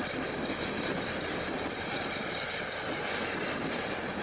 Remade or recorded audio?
recorded